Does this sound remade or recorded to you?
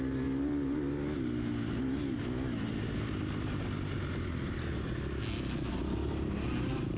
recorded